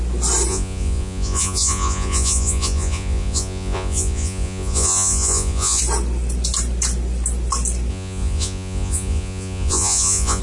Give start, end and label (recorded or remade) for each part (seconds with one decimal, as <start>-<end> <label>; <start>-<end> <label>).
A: 0.0-0.5 recorded; 0.5-5.8 remade; 5.8-7.9 recorded; 7.9-10.4 remade